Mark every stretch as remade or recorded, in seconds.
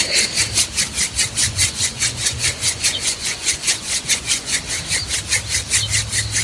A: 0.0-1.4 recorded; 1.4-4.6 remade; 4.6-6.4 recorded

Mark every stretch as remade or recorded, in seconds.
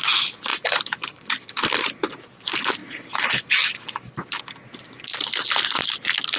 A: 0.0-6.4 recorded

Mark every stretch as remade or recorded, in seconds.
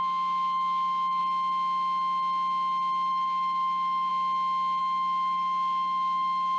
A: 0.0-1.2 remade; 1.2-3.1 recorded; 3.1-4.1 remade; 4.1-4.8 recorded; 4.8-6.6 remade